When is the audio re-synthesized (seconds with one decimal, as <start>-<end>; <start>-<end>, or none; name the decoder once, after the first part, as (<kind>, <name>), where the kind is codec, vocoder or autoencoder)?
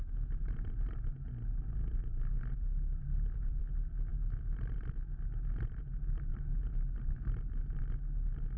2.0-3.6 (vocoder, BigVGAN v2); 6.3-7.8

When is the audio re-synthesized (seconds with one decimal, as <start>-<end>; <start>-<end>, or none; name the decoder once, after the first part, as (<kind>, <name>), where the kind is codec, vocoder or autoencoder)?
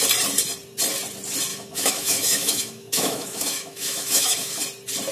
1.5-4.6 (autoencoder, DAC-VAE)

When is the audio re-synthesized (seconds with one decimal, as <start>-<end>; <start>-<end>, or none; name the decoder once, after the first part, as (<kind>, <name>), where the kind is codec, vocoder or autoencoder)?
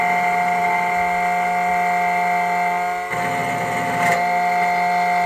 none